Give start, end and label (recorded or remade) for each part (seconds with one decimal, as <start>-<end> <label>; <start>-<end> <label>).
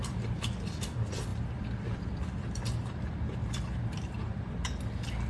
0.0-5.3 remade